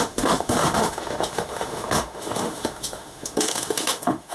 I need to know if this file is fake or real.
fake